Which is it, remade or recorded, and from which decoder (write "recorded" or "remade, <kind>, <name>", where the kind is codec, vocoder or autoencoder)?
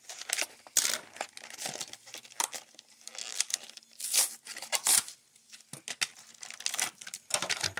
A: recorded